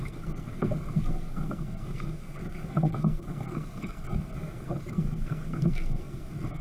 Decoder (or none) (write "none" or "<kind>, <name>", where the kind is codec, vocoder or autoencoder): codec, SNAC